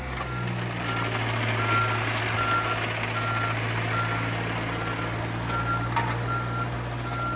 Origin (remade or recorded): recorded